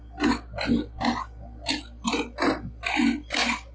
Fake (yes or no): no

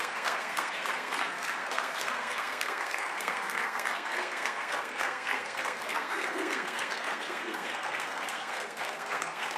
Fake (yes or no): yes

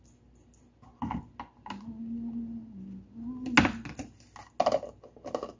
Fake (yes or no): no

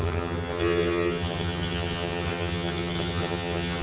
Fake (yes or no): yes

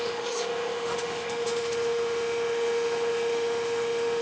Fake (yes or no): yes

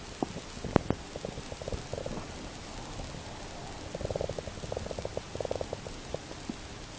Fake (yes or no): no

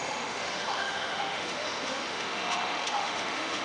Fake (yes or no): yes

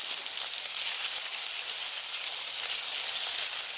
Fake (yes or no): no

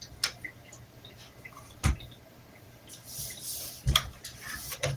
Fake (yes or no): no